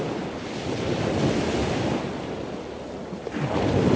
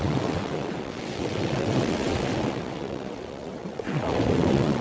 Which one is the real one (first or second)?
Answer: first